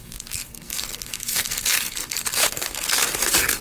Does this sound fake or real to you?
fake